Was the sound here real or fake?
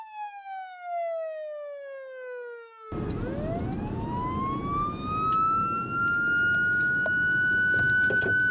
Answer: real